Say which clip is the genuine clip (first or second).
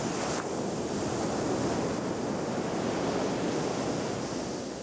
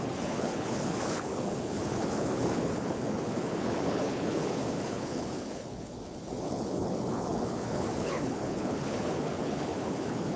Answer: first